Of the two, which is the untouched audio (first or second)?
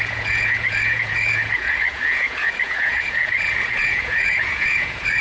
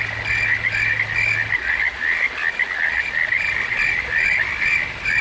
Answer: second